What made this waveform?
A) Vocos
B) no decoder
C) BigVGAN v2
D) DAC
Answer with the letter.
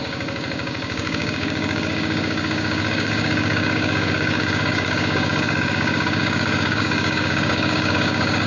D